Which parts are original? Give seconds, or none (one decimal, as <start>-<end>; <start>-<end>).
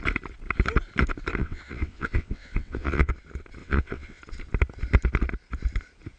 0.0-1.4; 3.1-3.6; 4.2-6.2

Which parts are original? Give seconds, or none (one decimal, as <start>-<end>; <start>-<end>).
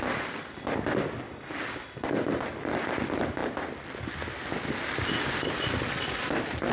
0.0-6.7